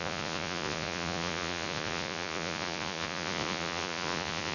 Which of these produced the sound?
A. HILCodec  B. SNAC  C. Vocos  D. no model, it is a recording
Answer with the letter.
C